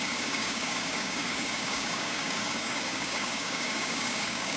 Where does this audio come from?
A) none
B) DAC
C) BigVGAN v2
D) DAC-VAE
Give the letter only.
B